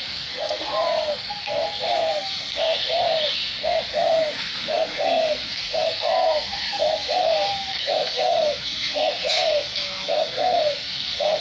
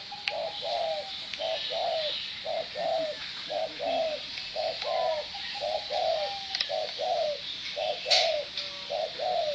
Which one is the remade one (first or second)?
first